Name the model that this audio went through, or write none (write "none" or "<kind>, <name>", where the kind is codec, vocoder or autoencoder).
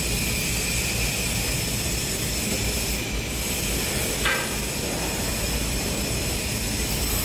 none